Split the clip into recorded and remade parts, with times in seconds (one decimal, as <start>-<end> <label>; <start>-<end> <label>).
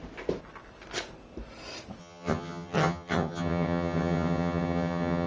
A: 0.0-2.0 recorded; 2.0-5.3 remade